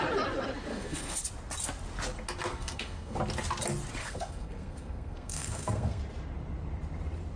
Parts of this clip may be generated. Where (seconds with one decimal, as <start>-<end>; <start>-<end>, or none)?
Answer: 0.7-1.2; 2.5-3.2; 4.0-6.0